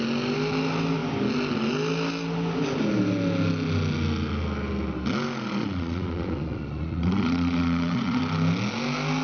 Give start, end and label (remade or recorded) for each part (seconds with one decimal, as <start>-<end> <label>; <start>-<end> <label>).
0.0-5.6 recorded; 5.6-8.2 remade; 8.2-9.2 recorded